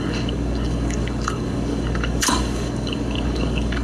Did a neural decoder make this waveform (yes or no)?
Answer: yes